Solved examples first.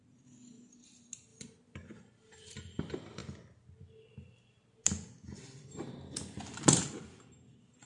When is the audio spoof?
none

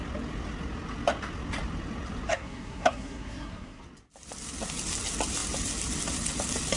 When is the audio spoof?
2.3-3.8 (codec, SNAC)

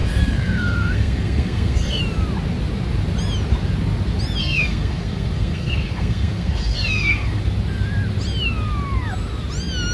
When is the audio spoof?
0.0-2.0 (codec, SNAC); 4.4-7.4

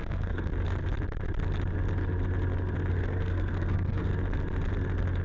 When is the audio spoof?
0.0-0.5 (codec, SNAC); 2.9-4.1

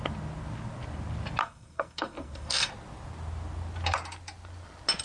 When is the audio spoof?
1.4-2.7 (codec, SNAC)

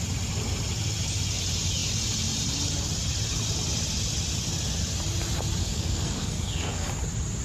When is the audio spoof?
5.6-6.9 (codec, SNAC)

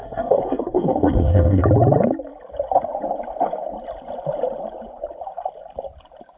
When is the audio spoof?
0.0-1.6 (codec, SNAC)

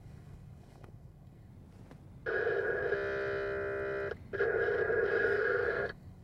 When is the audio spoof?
0.0-1.5 (codec, SNAC); 5.2-6.2